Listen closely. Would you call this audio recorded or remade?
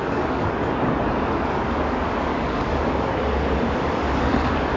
remade